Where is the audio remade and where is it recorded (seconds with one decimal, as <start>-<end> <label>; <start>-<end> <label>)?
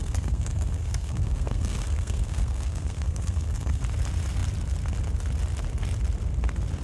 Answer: 0.0-3.8 remade; 3.8-6.8 recorded